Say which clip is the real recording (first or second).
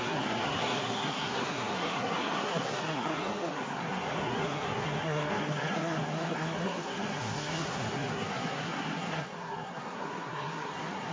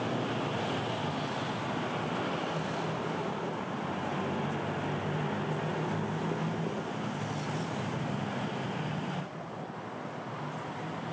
second